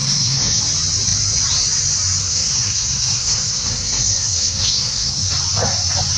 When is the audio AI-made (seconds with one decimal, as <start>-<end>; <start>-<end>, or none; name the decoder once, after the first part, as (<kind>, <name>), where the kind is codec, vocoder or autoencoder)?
0.0-0.6 (codec, SNAC); 2.2-5.3